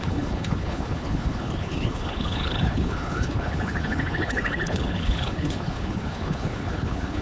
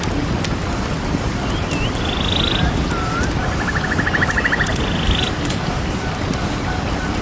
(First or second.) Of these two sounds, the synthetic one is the first